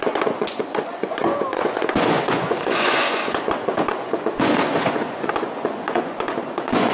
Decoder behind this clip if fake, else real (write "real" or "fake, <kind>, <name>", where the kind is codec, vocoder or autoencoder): fake, vocoder, Vocos